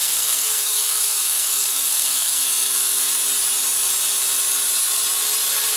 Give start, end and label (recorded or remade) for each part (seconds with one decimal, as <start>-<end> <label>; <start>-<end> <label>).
0.0-3.1 remade; 3.1-5.8 recorded